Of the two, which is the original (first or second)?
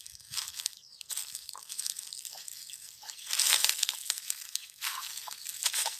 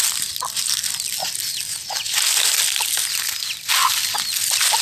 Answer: second